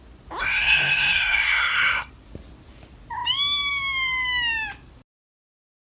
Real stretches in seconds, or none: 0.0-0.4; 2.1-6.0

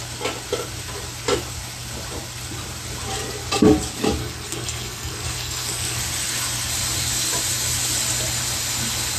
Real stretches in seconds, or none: 0.0-4.2; 6.0-9.2

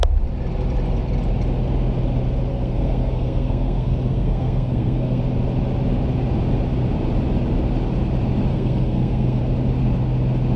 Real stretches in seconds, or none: 0.0-2.5; 5.2-8.5; 9.4-10.6

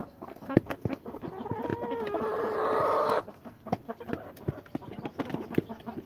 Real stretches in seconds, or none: 1.2-3.0; 4.0-6.1